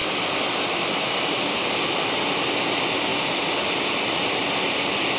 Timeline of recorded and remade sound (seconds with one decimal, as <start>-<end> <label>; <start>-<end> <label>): 0.0-5.2 recorded